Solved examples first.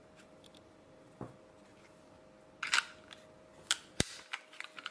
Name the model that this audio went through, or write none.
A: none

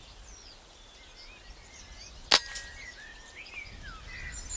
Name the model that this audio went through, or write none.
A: none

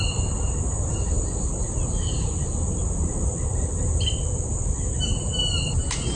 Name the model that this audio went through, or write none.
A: none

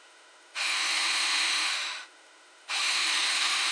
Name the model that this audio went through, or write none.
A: autoencoder, DAC-VAE